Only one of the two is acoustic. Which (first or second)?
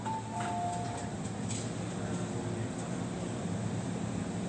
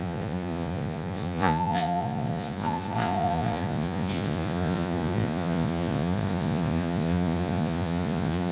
first